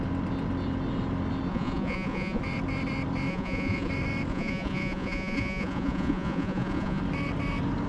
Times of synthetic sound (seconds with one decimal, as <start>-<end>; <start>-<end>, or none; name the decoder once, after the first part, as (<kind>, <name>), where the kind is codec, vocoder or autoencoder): 1.5-2.4 (vocoder, Vocos); 3.3-3.9; 4.3-7.0